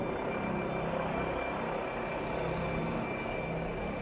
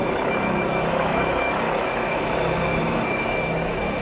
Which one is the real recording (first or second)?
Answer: first